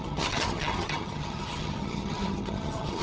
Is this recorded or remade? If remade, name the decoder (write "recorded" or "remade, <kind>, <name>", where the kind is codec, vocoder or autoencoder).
remade, vocoder, HiFi-GAN